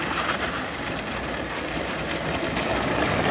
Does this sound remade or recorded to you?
remade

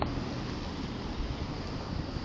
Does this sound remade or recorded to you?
recorded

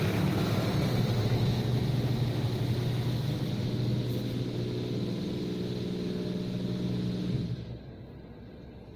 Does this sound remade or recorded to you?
recorded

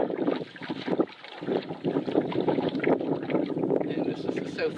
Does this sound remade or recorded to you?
recorded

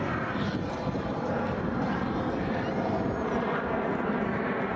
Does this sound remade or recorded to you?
recorded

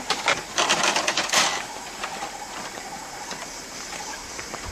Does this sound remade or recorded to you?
remade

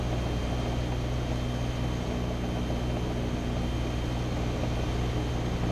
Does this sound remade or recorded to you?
recorded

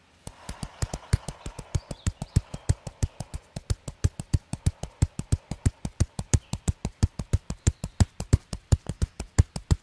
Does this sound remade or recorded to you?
remade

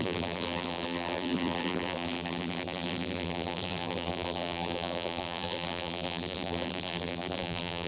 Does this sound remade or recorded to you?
remade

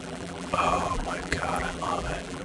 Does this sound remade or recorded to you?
remade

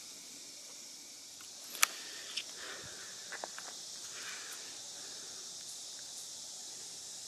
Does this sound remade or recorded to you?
remade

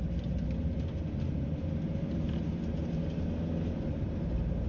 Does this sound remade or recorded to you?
recorded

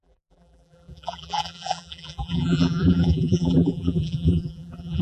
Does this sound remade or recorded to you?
remade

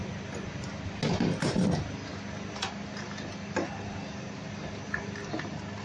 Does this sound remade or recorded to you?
recorded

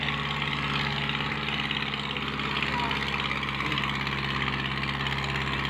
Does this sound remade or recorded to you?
recorded